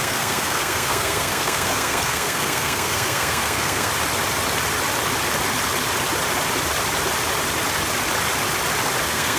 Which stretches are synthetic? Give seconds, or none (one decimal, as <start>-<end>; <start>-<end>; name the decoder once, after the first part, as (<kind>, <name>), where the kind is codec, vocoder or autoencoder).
0.0-3.9 (codec, SNAC); 9.0-9.4